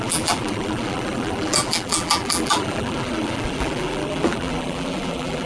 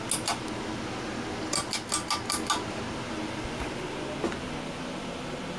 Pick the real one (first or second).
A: second